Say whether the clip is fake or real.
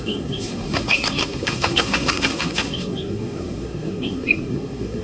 fake